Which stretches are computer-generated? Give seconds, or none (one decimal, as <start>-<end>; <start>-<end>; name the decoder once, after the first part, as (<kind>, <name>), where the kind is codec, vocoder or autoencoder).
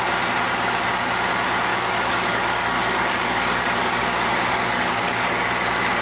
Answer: 1.7-5.3 (codec, DAC)